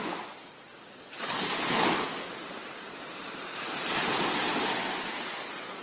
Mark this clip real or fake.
real